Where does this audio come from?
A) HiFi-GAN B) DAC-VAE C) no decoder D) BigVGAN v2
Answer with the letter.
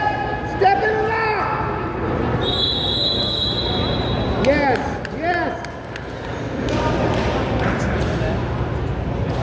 C